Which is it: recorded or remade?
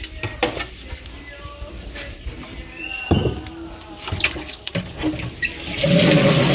recorded